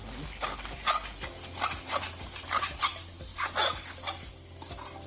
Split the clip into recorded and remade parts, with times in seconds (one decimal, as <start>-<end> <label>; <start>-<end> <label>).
0.0-5.1 recorded